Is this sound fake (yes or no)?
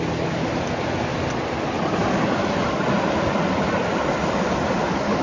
no